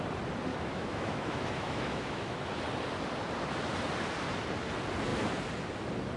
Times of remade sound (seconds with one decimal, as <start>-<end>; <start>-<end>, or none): 0.5-2.5